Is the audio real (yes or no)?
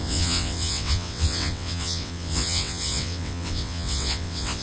no